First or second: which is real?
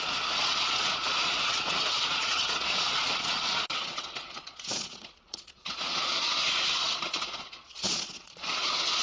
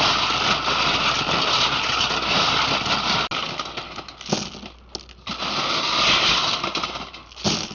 second